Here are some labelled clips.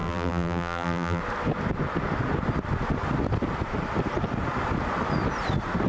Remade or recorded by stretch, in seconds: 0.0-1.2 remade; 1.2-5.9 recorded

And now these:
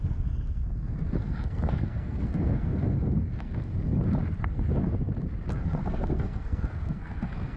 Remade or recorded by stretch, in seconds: 0.0-3.6 remade; 3.6-4.4 recorded; 4.4-4.9 remade; 4.9-5.5 recorded; 5.5-7.6 remade

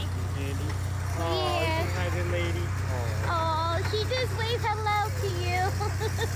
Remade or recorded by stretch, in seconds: 0.0-6.4 recorded